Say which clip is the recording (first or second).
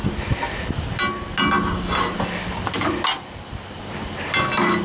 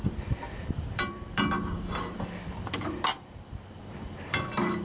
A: first